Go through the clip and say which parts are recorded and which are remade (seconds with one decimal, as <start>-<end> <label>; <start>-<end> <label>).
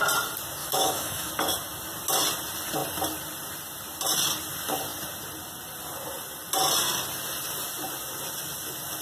0.0-0.6 recorded; 0.6-1.3 remade; 1.3-9.0 recorded